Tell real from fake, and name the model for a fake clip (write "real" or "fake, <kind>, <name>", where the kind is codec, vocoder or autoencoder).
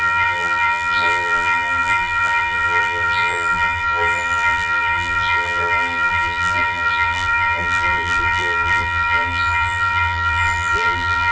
fake, vocoder, BigVGAN v2